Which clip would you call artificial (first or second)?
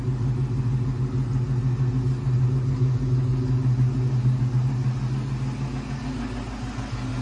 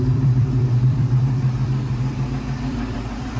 second